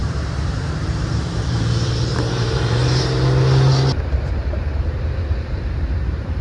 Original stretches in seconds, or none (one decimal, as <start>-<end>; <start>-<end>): 2.8-4.1